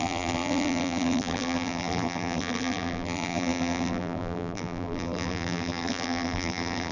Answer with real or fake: fake